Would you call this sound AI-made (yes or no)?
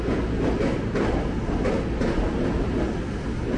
no